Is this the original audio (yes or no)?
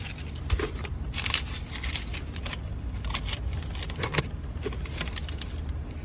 yes